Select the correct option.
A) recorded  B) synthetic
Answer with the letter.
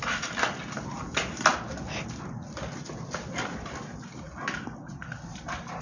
A